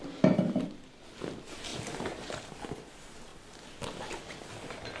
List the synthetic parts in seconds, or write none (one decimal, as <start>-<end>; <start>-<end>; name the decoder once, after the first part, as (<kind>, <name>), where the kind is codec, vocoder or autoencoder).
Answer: 1.7-2.3 (vocoder, BigVGAN v2)